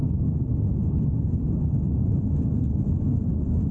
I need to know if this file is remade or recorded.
recorded